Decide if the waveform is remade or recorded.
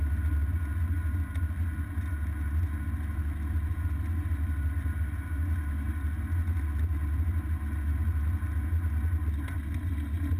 recorded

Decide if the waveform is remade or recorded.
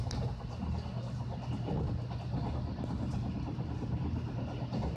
recorded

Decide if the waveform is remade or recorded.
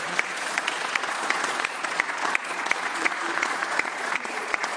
remade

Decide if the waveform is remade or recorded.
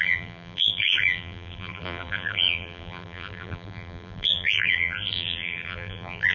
remade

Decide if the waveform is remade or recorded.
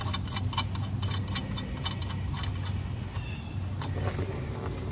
recorded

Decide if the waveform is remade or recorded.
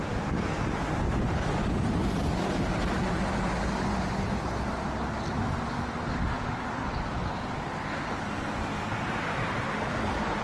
recorded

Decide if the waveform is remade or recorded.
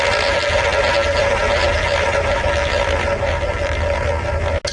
recorded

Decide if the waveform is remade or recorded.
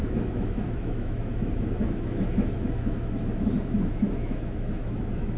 remade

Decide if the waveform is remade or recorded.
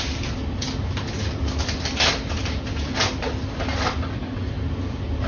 recorded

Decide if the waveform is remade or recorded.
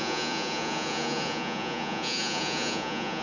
remade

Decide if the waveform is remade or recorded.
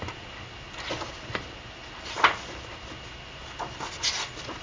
recorded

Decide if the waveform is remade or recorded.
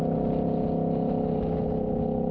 recorded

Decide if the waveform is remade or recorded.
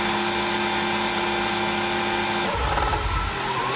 recorded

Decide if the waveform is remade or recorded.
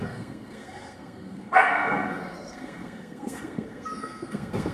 remade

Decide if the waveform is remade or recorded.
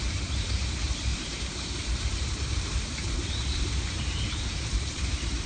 remade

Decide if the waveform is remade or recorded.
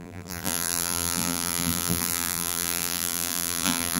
remade